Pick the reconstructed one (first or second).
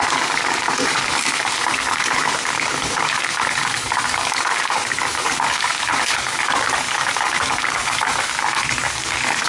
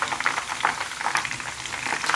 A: first